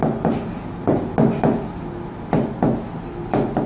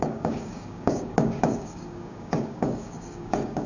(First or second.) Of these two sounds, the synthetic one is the second